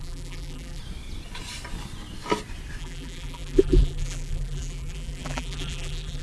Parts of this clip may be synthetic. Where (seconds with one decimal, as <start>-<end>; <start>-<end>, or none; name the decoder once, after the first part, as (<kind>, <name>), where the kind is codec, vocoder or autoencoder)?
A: 0.0-0.8 (vocoder, BigVGAN v2); 2.8-6.2